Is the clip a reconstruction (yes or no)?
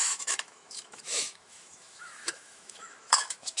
yes